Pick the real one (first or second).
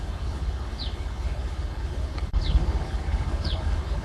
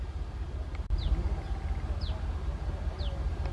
second